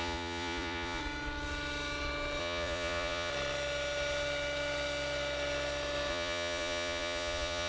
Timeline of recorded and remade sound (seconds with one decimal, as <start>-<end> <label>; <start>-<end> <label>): 0.0-1.0 remade; 1.0-2.4 recorded; 2.4-3.3 remade; 3.3-6.1 recorded; 6.1-7.7 remade